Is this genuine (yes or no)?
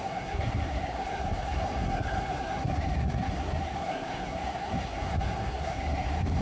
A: no